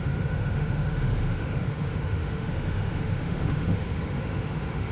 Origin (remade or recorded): remade